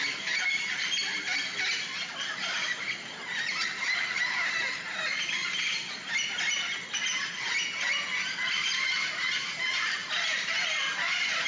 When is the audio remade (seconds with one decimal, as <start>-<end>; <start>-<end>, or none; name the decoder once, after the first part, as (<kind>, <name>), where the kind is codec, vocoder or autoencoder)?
none